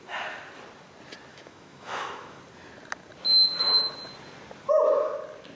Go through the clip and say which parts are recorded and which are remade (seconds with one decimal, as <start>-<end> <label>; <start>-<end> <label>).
0.0-1.3 recorded; 1.3-2.4 remade; 2.4-5.5 recorded